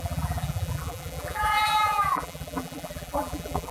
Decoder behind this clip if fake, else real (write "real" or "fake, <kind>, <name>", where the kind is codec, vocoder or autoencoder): fake, vocoder, BigVGAN v2